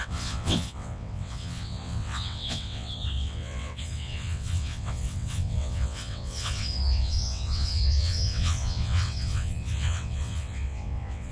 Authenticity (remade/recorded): remade